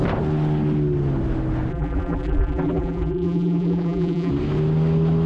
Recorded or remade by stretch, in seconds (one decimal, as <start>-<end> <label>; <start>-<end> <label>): 0.0-1.7 recorded; 1.7-4.3 remade; 4.3-5.3 recorded

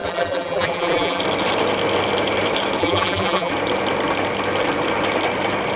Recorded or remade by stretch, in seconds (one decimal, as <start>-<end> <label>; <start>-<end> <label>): 0.0-1.2 remade; 1.2-2.8 recorded; 2.8-3.5 remade; 3.5-5.8 recorded

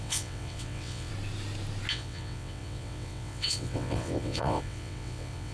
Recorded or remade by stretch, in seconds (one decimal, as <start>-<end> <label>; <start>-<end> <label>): 0.0-1.1 remade; 1.1-1.9 recorded; 1.9-5.5 remade

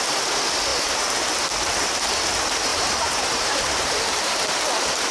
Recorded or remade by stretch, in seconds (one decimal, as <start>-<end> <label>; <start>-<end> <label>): 0.0-2.7 recorded; 2.7-4.4 remade; 4.4-5.1 recorded

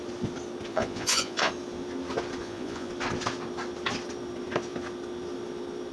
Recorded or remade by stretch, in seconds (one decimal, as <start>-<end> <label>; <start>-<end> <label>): 0.0-0.7 recorded; 0.7-1.5 remade; 1.5-2.4 recorded; 2.4-2.9 remade; 2.9-5.9 recorded